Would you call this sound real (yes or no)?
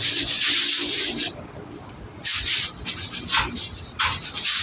yes